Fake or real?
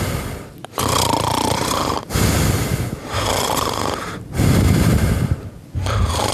real